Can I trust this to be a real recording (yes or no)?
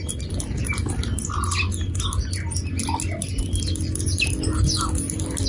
yes